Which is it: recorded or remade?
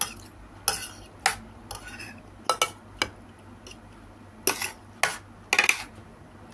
recorded